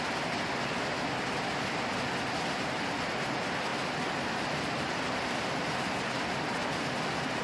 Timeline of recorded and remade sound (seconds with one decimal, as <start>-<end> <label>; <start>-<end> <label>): 0.0-3.7 recorded; 3.7-5.7 remade; 5.7-7.4 recorded